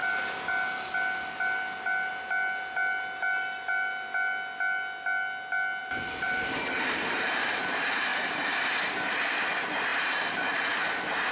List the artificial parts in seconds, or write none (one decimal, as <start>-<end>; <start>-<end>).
5.8-7.6; 9.9-10.6